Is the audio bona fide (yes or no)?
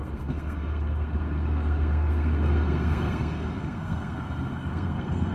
no